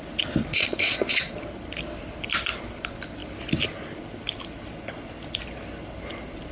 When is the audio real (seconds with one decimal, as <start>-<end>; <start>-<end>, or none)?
0.0-0.5; 1.3-6.5